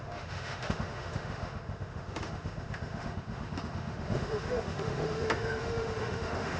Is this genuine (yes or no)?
no